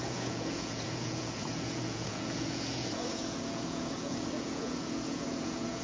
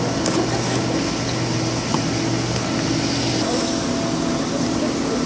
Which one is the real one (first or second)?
second